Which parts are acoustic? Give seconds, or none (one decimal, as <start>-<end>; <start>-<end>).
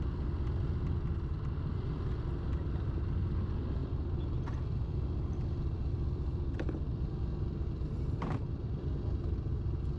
0.0-10.0